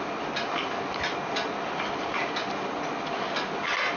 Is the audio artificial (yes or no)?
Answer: no